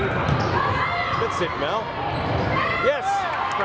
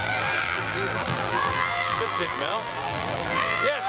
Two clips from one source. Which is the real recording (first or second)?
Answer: first